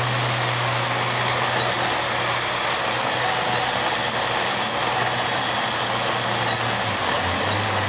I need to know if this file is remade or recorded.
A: recorded